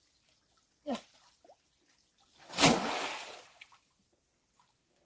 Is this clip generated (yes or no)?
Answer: no